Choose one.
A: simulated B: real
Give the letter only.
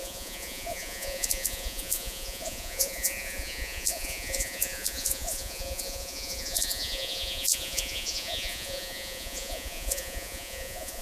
A